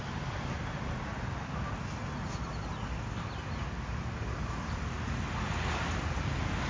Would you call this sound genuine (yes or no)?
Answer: yes